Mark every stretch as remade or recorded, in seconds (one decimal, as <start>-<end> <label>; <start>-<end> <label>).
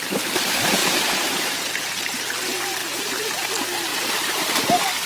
0.0-0.8 recorded; 0.8-1.6 remade; 1.6-2.8 recorded; 2.8-3.5 remade; 3.5-3.9 recorded; 3.9-4.5 remade; 4.5-5.1 recorded